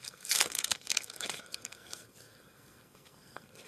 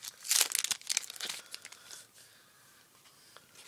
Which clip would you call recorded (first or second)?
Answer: second